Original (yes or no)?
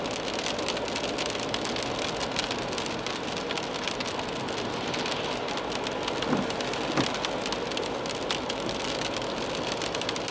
yes